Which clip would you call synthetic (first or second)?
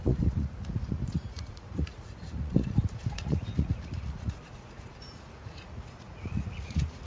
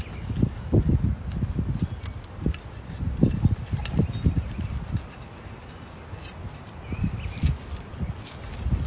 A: first